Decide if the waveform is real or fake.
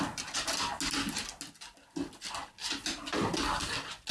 real